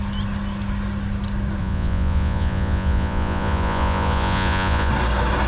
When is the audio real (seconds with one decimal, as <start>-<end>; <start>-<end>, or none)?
0.0-1.6; 4.9-5.5